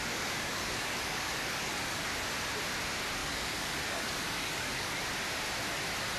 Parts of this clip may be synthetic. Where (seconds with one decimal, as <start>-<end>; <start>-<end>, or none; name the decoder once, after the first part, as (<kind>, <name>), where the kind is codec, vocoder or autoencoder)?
0.0-2.1 (codec, DAC); 3.2-4.9